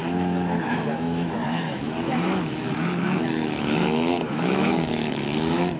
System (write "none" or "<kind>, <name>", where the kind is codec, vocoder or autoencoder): autoencoder, DAC-VAE